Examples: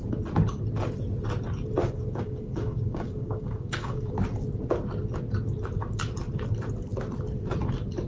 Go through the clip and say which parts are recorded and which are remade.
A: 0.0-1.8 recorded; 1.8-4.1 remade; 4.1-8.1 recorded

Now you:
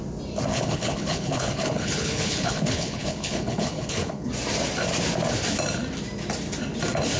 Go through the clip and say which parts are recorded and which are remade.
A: 0.0-0.5 recorded; 0.5-4.3 remade; 4.3-7.2 recorded

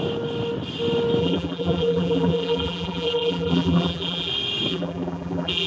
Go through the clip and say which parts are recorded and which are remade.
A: 0.0-1.2 recorded; 1.2-4.3 remade; 4.3-4.7 recorded; 4.7-5.7 remade

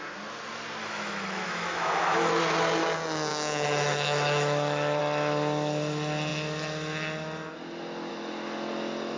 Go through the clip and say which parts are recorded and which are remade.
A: 0.0-0.8 recorded; 0.8-2.3 remade; 2.3-3.3 recorded; 3.3-5.0 remade; 5.0-9.2 recorded

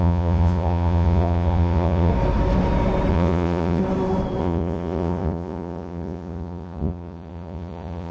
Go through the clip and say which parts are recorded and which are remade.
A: 0.0-2.1 remade; 2.1-3.1 recorded; 3.1-3.8 remade; 3.8-4.4 recorded; 4.4-8.1 remade

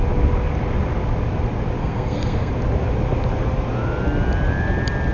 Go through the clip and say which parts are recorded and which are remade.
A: 0.0-1.8 recorded; 1.8-2.5 remade; 2.5-5.1 recorded

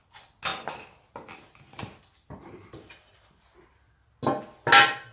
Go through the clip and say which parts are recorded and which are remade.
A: 0.0-5.1 recorded